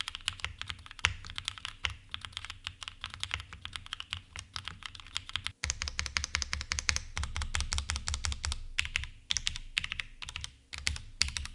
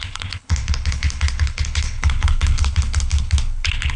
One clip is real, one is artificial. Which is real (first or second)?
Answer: first